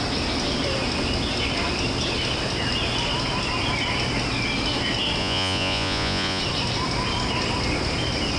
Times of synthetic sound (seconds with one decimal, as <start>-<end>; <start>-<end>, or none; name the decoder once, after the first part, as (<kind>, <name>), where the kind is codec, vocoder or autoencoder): 5.2-6.4 (vocoder, Vocos)